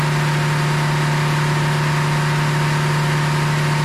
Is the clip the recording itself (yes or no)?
yes